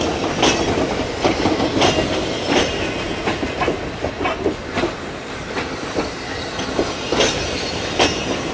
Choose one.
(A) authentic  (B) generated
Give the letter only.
A